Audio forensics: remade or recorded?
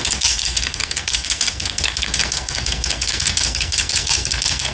remade